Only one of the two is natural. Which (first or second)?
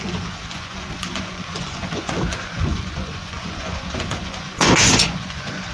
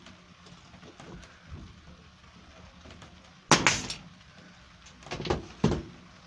second